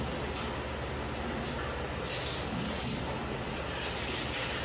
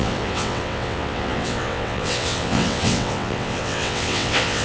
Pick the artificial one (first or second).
second